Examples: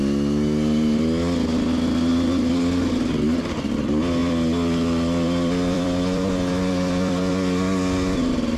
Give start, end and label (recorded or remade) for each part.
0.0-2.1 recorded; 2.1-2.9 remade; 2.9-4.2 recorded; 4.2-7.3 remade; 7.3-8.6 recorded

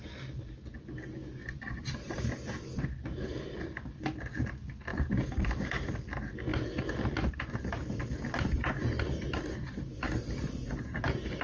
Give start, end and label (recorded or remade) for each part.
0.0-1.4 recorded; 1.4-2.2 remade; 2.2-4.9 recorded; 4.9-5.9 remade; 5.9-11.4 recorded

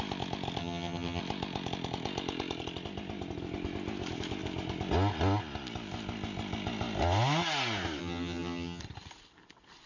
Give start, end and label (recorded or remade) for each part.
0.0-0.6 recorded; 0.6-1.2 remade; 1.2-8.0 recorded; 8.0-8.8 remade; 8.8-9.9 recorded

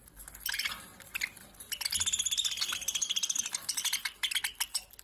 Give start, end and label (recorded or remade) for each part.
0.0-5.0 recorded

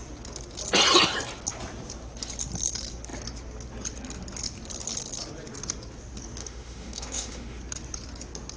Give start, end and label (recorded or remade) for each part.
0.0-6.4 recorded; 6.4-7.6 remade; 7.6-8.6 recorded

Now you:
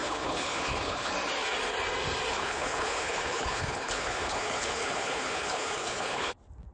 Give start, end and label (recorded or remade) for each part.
0.0-1.1 remade; 1.1-2.3 recorded; 2.3-6.3 remade; 6.3-6.7 recorded